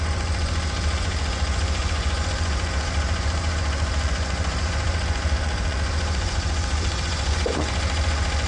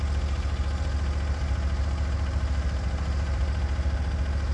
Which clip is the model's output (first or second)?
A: first